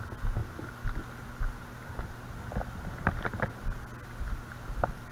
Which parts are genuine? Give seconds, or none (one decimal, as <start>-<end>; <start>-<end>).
0.0-5.1